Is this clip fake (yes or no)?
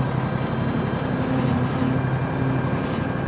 no